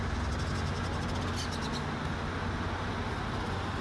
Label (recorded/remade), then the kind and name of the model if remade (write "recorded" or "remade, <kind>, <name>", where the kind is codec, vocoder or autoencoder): recorded